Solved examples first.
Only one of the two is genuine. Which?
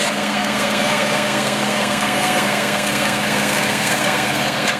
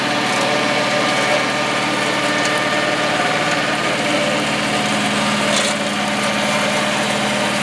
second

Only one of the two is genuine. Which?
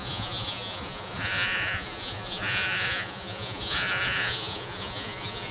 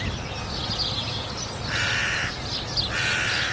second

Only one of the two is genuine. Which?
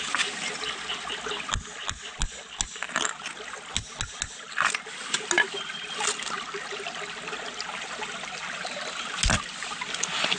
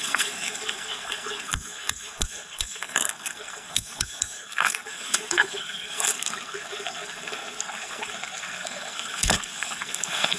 first